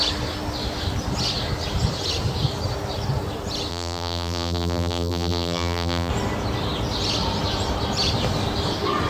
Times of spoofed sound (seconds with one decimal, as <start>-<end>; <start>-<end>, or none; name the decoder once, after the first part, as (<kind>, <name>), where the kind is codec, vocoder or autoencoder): 3.7-6.1 (vocoder, BigVGAN v2)